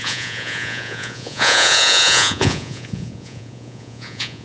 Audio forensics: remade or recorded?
remade